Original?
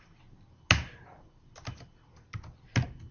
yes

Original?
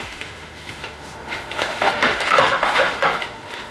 no